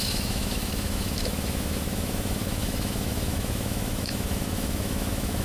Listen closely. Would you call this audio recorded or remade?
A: remade